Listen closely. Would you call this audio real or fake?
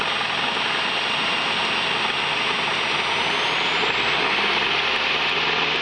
real